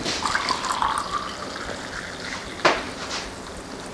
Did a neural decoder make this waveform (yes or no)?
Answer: no